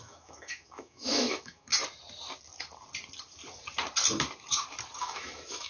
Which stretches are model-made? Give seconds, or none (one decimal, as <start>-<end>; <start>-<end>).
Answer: 0.0-1.7; 5.0-5.7

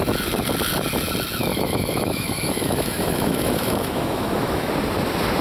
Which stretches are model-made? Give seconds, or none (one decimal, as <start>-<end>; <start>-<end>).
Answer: 1.5-4.7